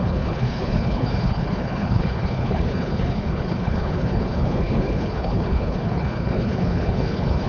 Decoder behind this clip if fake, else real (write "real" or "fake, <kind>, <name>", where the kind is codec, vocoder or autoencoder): fake, codec, HILCodec